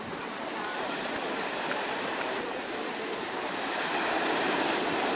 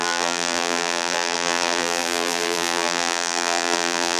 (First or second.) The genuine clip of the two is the first